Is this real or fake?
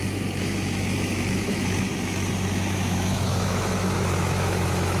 fake